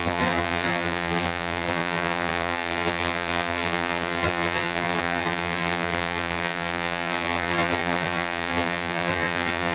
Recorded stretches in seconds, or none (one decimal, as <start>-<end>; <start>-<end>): none